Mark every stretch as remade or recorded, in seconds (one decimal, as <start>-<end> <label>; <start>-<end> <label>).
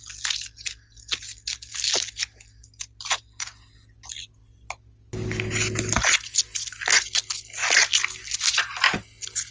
0.0-9.5 recorded